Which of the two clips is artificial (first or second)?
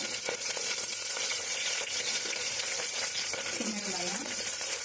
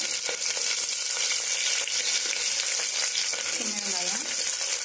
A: first